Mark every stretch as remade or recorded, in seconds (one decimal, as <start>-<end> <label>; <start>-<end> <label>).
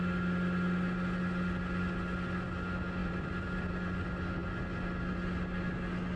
0.0-3.0 recorded; 3.0-3.7 remade; 3.7-6.2 recorded